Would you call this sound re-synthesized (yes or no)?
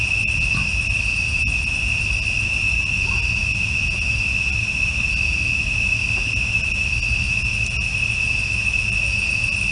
no